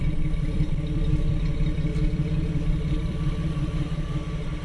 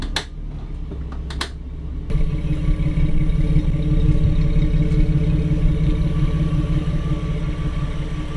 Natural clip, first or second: second